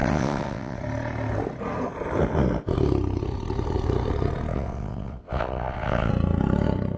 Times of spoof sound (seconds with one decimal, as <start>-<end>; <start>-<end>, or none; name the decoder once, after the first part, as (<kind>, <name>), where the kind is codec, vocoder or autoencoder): 0.0-0.8 (vocoder, WaveNeXt); 4.5-6.1